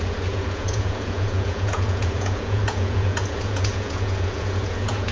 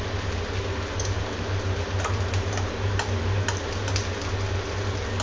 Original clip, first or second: second